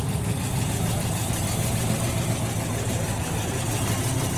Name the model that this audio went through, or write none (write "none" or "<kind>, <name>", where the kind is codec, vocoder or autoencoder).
none